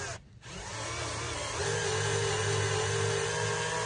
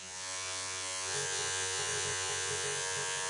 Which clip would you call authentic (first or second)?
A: first